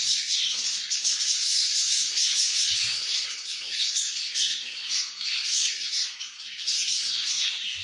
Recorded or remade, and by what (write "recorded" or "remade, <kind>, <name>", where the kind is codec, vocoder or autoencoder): remade, codec, SNAC